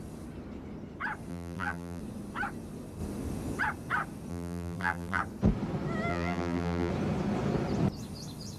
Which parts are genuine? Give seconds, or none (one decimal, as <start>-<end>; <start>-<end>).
0.0-1.3; 2.0-4.3; 5.2-6.1; 6.9-8.6